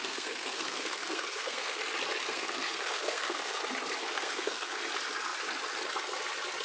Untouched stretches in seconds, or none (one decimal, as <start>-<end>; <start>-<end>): 1.8-2.3; 3.6-4.0; 4.8-6.6